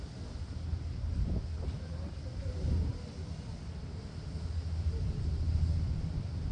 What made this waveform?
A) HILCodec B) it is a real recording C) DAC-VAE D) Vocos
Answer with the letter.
B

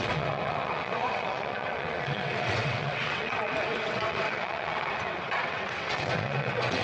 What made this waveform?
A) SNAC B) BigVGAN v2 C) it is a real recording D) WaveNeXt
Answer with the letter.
D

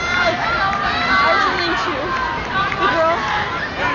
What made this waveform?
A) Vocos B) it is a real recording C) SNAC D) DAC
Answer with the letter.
B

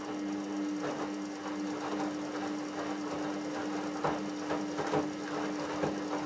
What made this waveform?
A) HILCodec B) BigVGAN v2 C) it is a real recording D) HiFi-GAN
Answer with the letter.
C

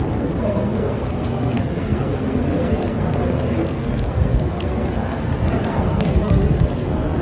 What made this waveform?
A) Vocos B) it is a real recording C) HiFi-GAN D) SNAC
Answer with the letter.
D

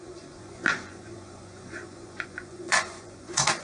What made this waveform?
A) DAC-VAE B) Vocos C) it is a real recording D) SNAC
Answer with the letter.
B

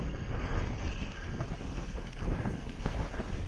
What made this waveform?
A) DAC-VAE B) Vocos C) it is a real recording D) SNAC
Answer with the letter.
D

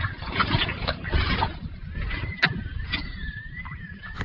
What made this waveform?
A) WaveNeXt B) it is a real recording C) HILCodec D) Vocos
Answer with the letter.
D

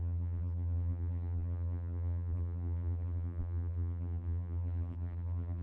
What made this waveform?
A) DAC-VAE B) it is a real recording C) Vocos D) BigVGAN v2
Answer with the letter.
D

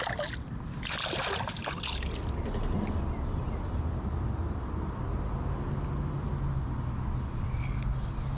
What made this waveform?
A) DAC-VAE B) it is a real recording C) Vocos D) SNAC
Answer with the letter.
B